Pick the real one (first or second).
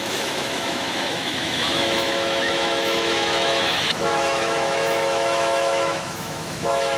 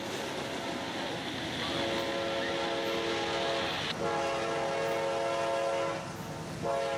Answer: second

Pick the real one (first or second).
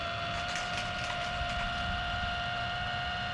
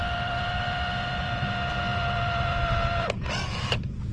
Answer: first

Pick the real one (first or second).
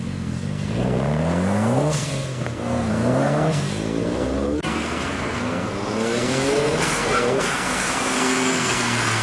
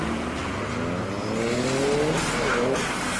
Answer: second